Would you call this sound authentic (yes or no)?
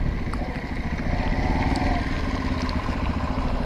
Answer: yes